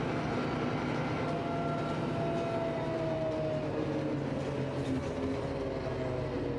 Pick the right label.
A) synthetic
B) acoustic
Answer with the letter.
B